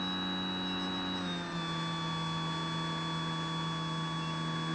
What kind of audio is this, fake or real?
real